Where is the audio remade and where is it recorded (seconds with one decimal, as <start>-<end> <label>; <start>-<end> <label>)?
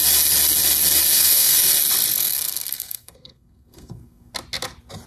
0.0-1.1 recorded; 1.1-1.7 remade; 1.7-2.2 recorded; 2.2-4.3 remade; 4.3-5.1 recorded